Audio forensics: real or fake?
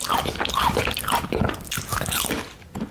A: real